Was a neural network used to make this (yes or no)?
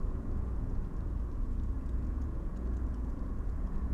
yes